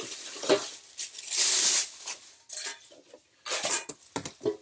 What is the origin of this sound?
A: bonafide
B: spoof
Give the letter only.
A